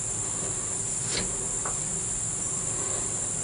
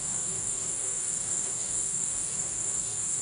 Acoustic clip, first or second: first